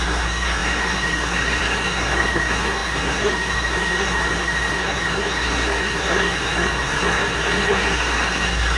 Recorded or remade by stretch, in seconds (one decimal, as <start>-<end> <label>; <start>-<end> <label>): 0.0-8.8 remade